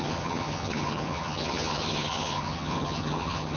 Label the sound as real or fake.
fake